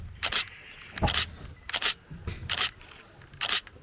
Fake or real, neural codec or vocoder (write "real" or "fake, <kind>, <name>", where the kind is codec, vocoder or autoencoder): real